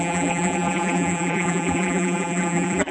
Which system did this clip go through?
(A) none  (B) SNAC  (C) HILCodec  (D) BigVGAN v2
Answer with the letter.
D